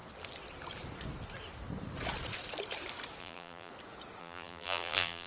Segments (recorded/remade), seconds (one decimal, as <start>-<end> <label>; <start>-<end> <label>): 0.0-3.2 recorded; 3.2-3.7 remade; 3.7-4.2 recorded; 4.2-5.3 remade